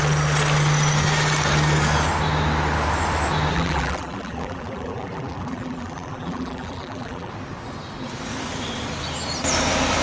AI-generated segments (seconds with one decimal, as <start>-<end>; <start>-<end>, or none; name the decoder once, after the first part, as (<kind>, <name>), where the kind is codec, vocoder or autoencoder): 3.5-7.3 (vocoder, BigVGAN v2)

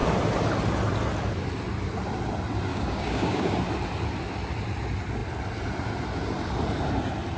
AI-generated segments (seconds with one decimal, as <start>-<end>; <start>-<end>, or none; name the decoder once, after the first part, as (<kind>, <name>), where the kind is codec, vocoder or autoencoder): 2.7-3.6 (codec, DAC)

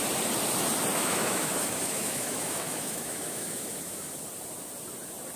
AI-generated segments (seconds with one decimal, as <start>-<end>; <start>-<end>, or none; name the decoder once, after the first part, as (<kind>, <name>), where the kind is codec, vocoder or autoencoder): 0.9-4.1 (autoencoder, DAC-VAE)

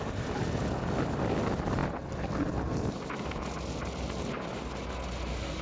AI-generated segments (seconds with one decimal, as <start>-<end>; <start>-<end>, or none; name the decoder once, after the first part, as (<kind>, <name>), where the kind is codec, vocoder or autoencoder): none